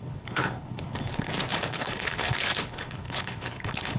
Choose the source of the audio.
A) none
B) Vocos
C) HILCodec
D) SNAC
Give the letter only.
C